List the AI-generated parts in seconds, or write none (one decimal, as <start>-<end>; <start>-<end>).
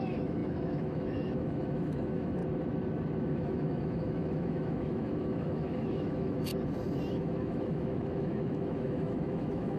0.0-2.4; 3.2-6.5; 7.1-9.8